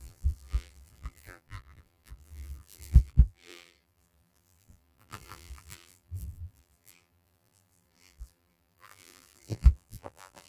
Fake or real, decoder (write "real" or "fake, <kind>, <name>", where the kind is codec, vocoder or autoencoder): fake, vocoder, BigVGAN v2